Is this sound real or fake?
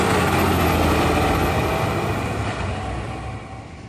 real